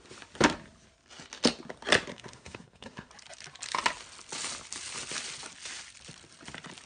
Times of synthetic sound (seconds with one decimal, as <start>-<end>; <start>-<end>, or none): 2.1-3.1